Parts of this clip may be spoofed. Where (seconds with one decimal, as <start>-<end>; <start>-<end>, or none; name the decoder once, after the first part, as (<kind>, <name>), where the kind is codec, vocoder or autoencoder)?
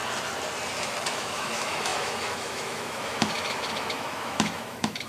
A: 1.1-5.1 (autoencoder, DAC-VAE)